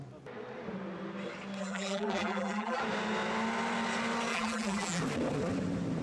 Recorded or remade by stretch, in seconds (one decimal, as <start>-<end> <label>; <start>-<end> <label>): 0.0-1.6 recorded; 1.6-2.8 remade; 2.8-4.3 recorded; 4.3-5.0 remade; 5.0-6.0 recorded